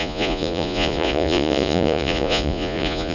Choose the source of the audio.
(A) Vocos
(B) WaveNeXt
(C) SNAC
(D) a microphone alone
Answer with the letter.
A